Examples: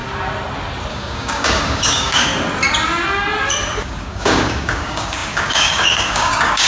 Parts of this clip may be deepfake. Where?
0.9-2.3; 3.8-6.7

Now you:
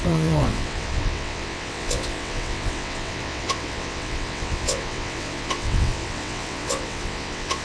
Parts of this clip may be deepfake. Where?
0.0-7.6

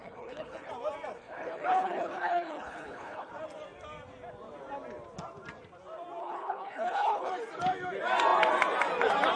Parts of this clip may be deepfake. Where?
0.0-0.7; 1.2-3.3; 6.2-7.3

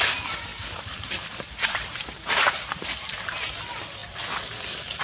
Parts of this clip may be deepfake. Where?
0.5-3.5

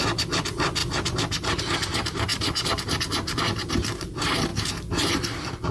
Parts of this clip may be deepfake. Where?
2.3-3.7; 4.5-5.1

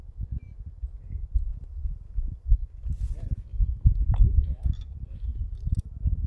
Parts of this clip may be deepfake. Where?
1.5-2.5